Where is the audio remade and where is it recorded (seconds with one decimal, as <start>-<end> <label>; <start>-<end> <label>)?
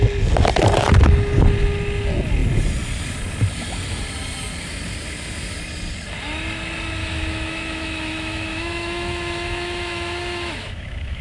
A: 0.0-7.0 recorded; 7.0-11.2 remade